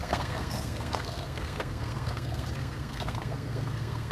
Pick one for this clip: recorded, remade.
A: remade